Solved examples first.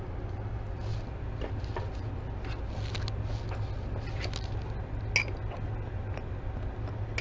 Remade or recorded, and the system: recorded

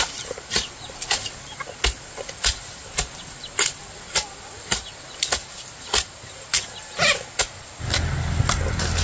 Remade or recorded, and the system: recorded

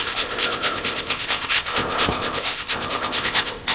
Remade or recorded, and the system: remade, codec, ZipCodec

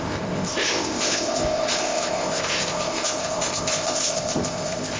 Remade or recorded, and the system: remade, codec, ZipCodec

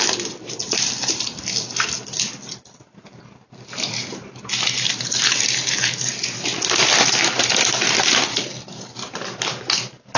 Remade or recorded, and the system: recorded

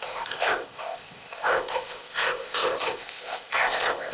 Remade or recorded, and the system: remade, codec, ZipCodec